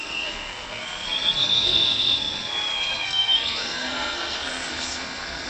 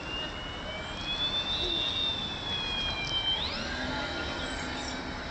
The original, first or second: second